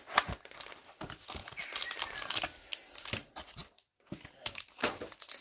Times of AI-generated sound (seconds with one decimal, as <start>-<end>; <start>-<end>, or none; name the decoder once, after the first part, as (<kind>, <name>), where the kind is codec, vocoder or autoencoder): none